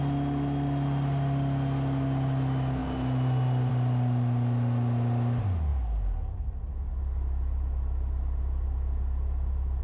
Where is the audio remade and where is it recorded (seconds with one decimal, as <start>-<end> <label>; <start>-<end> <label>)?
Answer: 0.0-9.8 recorded